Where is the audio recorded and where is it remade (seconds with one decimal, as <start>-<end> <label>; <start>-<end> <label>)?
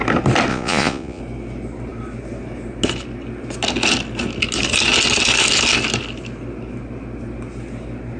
0.0-0.5 recorded; 0.5-1.2 remade; 1.2-8.2 recorded